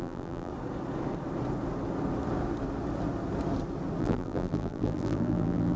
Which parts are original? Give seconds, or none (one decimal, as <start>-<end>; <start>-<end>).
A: 0.5-4.0